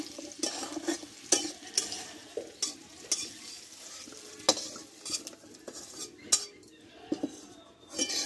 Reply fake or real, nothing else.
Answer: real